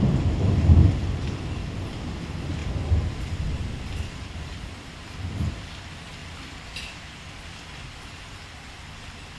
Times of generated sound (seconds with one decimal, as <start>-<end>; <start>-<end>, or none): 6.2-7.0